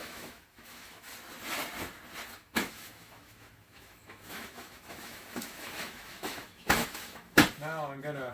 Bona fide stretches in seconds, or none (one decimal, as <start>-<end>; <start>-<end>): 1.1-2.4; 7.4-8.3